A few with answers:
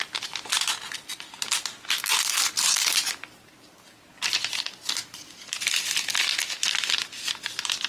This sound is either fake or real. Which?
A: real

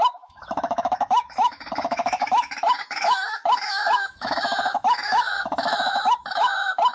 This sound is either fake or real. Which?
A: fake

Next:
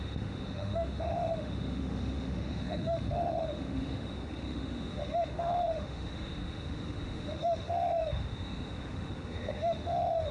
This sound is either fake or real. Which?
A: fake